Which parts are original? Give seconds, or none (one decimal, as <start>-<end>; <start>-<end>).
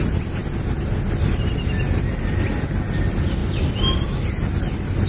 0.0-5.1